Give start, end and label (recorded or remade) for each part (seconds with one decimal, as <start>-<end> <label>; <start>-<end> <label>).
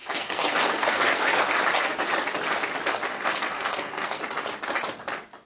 0.0-1.4 remade; 1.4-3.1 recorded; 3.1-4.2 remade; 4.2-5.5 recorded